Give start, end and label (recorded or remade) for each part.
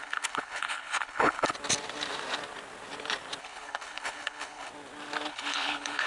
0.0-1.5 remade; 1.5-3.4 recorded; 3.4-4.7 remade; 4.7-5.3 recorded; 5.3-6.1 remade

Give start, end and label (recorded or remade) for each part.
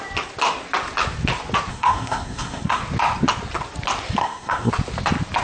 0.0-1.7 recorded; 1.7-2.8 remade; 2.8-4.2 recorded; 4.2-4.7 remade; 4.7-5.4 recorded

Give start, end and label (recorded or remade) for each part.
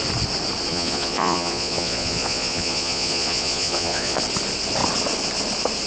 0.0-0.7 recorded; 0.7-4.2 remade; 4.2-5.9 recorded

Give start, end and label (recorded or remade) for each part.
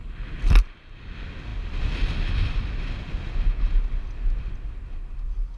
0.0-5.6 recorded